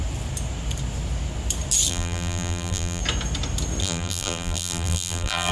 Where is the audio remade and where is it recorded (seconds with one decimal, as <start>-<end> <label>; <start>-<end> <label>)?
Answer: 0.0-1.9 recorded; 1.9-3.0 remade; 3.0-3.8 recorded; 3.8-5.5 remade

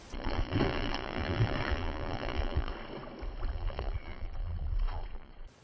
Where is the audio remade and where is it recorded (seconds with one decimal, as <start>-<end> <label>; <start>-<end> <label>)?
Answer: 0.0-2.7 remade; 2.7-3.5 recorded; 3.5-5.6 remade

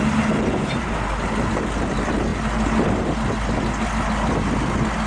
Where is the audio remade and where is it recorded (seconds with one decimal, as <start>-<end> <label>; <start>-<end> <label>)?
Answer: 0.0-5.1 recorded